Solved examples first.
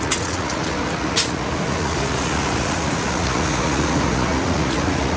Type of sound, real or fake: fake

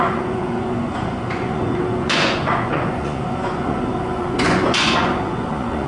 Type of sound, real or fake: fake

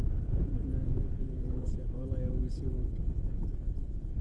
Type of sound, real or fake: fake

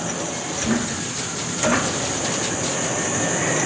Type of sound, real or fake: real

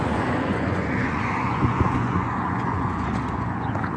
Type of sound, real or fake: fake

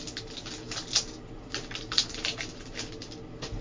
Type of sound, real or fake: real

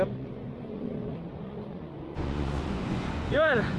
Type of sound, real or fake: fake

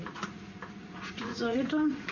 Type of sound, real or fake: fake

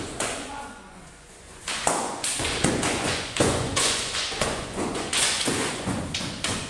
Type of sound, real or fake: fake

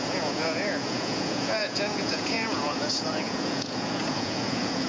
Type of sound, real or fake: fake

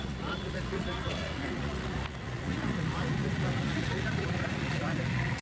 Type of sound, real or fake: fake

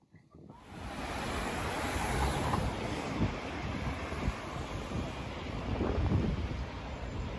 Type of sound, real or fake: real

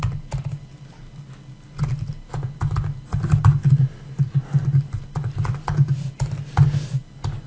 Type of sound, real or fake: real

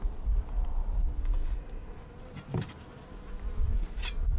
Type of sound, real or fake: real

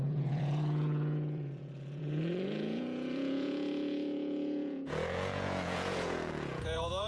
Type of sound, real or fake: fake